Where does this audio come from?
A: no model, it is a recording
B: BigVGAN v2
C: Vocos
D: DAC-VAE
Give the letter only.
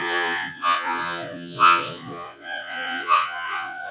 C